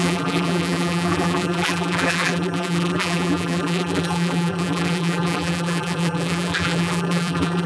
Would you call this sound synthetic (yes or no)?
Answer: yes